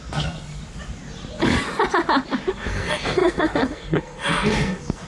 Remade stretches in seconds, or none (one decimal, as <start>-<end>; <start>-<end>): 0.0-0.6; 2.5-5.1